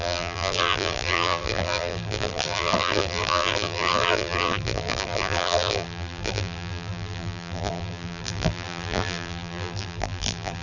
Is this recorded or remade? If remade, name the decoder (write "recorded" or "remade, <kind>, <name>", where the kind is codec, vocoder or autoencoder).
remade, vocoder, BigVGAN v2